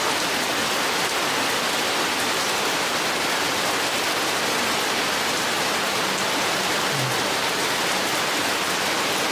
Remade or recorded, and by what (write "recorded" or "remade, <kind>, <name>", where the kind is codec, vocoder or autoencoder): recorded